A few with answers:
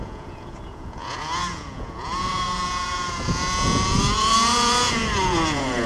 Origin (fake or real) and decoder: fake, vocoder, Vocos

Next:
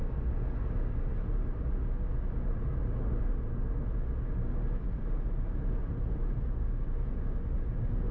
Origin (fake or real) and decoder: real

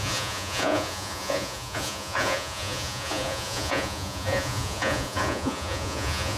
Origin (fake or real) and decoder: fake, vocoder, Vocos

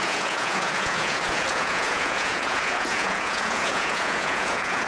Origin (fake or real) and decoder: fake, vocoder, Vocos